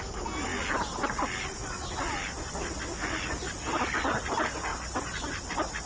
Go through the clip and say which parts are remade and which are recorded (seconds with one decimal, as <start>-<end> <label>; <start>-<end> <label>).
0.0-5.9 recorded